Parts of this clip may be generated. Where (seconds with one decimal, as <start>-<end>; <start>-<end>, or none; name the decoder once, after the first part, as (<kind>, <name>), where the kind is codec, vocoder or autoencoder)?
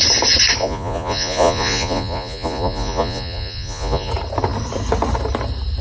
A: 0.6-4.1 (vocoder, Vocos)